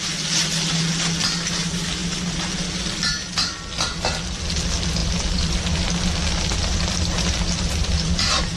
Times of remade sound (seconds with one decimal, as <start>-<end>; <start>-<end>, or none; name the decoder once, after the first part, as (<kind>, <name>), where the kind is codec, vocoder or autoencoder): none